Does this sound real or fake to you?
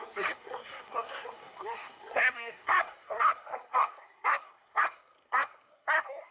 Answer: fake